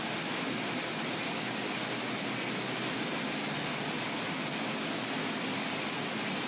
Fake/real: real